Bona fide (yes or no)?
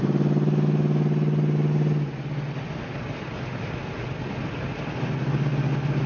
yes